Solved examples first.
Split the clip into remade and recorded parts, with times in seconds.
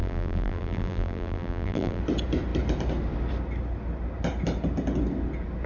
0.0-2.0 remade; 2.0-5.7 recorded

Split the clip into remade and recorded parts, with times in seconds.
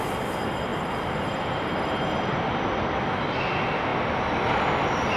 0.0-0.7 recorded; 0.7-2.8 remade; 2.8-5.2 recorded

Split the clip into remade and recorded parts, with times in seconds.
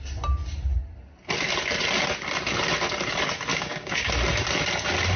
0.0-3.5 recorded; 3.5-4.1 remade; 4.1-5.2 recorded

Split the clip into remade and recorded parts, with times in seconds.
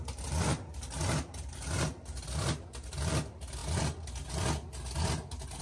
0.0-5.6 recorded